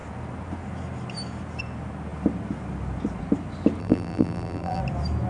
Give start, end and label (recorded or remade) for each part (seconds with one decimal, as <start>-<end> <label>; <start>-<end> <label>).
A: 0.0-3.8 recorded; 3.8-4.8 remade; 4.8-5.3 recorded